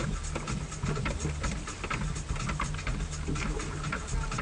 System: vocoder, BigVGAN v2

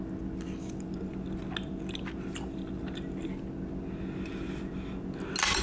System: none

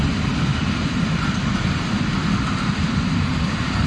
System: none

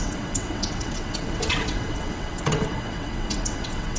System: vocoder, WaveNeXt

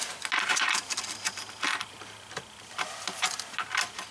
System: none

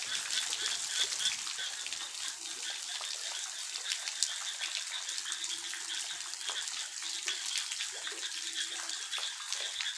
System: none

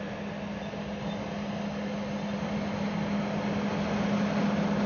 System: none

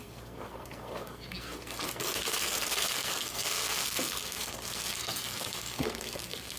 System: codec, SNAC